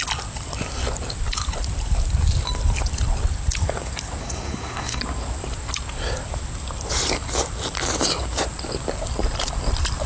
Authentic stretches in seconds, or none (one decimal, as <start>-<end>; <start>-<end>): 0.0-4.2; 5.0-10.1